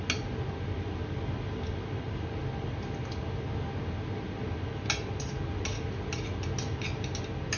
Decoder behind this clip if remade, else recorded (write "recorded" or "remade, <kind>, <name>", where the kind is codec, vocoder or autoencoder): recorded